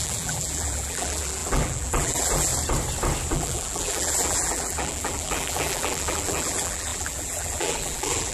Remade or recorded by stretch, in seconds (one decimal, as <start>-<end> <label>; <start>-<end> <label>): 0.0-2.5 remade; 2.5-3.3 recorded; 3.3-8.3 remade